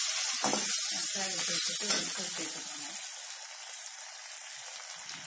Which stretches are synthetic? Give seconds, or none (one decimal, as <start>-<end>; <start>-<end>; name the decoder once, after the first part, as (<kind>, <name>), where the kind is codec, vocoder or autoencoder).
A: none